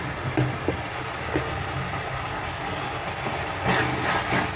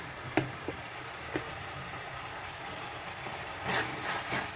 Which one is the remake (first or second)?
second